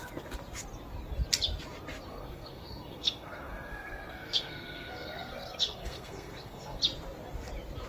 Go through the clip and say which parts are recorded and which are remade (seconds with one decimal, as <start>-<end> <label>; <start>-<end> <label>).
0.0-2.1 recorded; 2.1-6.8 remade; 6.8-7.9 recorded